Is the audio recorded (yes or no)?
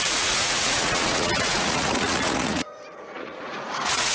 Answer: no